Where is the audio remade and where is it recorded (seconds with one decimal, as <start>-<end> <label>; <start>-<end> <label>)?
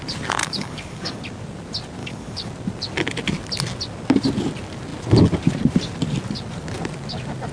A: 0.0-0.4 recorded; 0.4-1.2 remade; 1.2-2.0 recorded; 2.0-2.5 remade; 2.5-7.5 recorded